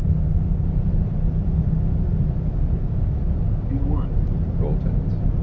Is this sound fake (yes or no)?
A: no